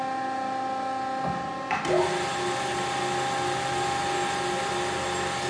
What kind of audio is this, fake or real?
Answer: real